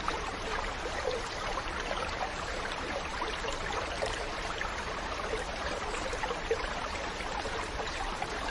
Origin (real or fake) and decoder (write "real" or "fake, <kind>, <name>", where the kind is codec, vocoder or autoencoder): fake, vocoder, BigVGAN v2